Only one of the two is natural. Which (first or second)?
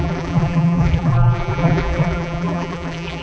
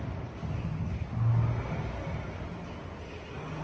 second